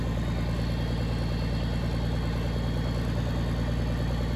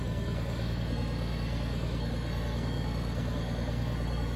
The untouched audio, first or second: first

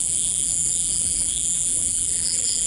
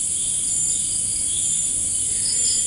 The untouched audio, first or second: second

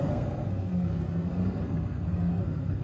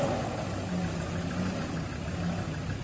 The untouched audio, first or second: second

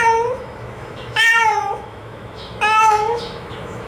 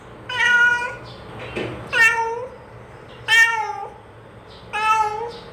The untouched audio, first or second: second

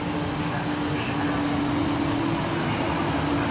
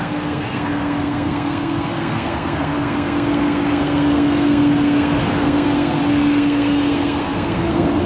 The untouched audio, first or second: first